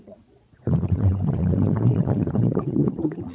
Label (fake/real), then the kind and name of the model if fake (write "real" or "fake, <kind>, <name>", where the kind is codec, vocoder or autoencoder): fake, vocoder, Vocos